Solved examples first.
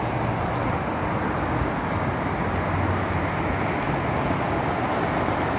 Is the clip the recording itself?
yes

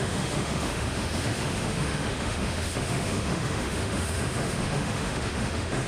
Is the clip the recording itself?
no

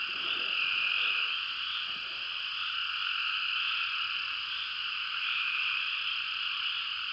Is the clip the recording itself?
yes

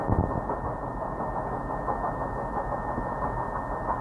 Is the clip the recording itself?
yes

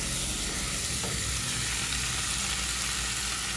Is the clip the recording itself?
yes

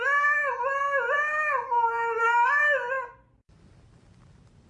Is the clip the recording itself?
yes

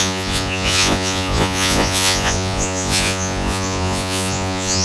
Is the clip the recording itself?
no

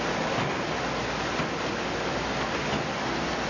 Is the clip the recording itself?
yes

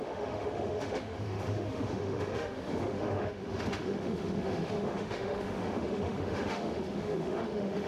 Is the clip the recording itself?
no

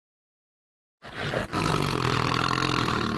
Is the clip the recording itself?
yes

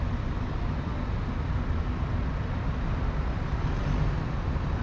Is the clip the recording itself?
yes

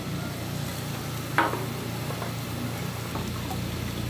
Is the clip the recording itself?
yes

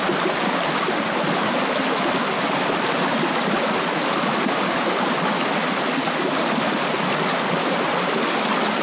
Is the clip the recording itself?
yes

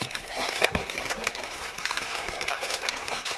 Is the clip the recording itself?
no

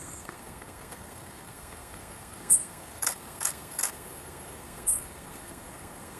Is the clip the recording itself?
no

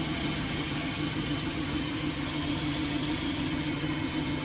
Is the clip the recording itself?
no